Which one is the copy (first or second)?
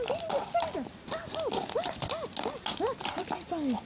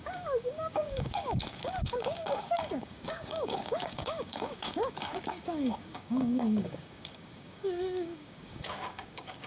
second